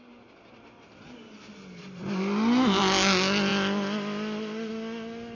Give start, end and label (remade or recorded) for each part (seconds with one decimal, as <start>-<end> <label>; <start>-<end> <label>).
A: 0.0-5.3 recorded